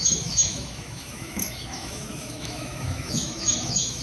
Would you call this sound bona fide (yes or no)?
no